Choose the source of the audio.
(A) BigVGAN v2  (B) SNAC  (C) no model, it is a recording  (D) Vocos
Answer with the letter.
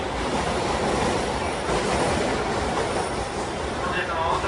C